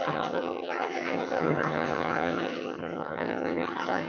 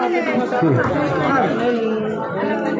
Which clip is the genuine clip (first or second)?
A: second